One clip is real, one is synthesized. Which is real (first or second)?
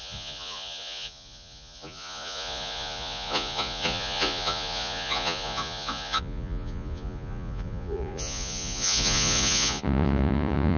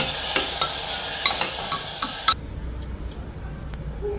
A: second